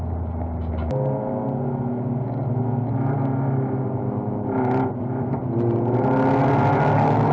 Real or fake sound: real